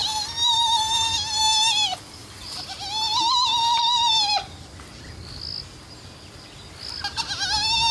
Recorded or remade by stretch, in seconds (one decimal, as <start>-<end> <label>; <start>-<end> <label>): 0.0-1.4 remade; 1.4-2.2 recorded; 2.2-4.1 remade; 4.1-7.9 recorded